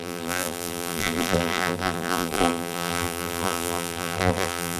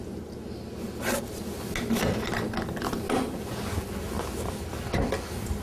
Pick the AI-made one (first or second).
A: first